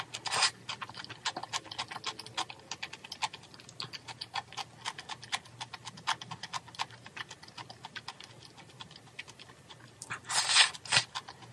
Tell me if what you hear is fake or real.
real